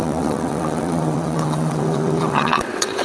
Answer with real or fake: fake